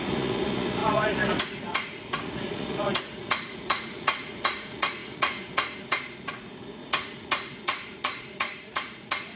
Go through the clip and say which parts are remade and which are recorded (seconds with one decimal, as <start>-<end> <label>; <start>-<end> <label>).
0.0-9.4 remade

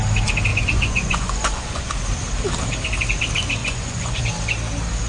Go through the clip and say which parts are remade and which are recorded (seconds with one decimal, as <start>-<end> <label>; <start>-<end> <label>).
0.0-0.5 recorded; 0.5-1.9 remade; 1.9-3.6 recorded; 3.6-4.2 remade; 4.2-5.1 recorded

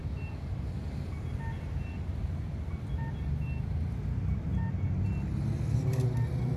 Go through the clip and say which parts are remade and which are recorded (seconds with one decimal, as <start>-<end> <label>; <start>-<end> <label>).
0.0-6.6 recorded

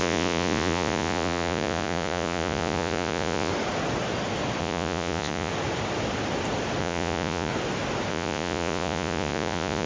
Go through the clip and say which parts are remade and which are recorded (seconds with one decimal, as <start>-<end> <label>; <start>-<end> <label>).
0.0-3.5 remade; 3.5-4.6 recorded; 4.6-5.5 remade; 5.5-6.8 recorded; 6.8-7.5 remade; 7.5-8.1 recorded; 8.1-9.9 remade